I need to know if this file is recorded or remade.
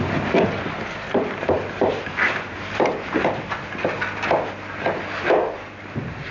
recorded